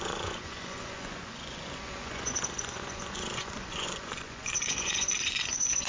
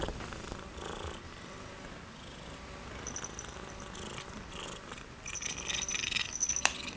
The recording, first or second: second